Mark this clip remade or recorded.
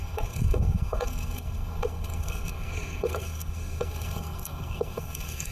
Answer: remade